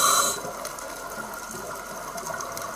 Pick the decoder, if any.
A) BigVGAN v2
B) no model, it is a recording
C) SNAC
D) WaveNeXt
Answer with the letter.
B